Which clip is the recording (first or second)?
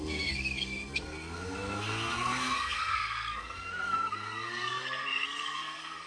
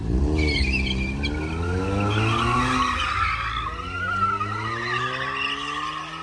second